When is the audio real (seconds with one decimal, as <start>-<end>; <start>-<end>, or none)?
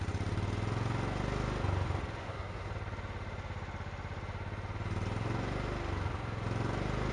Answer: 0.0-2.2; 2.7-7.1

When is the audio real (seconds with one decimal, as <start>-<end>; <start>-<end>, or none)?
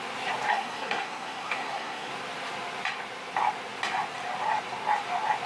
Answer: 0.0-0.5; 2.1-5.5